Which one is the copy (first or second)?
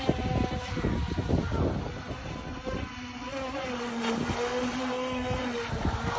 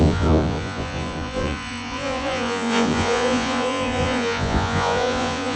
second